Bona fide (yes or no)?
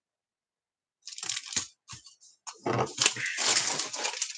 yes